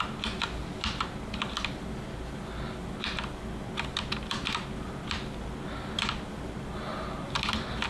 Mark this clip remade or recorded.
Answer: recorded